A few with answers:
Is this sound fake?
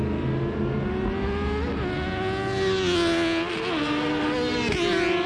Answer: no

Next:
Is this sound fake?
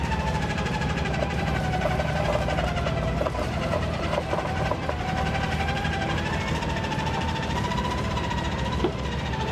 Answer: yes